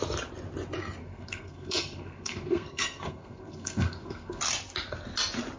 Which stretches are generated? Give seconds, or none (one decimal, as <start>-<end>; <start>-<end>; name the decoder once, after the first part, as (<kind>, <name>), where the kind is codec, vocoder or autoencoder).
1.0-4.4 (codec, SNAC)